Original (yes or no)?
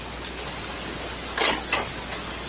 yes